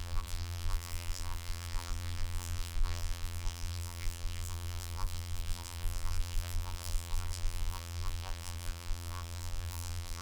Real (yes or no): no